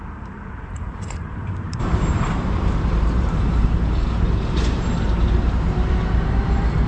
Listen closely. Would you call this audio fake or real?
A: fake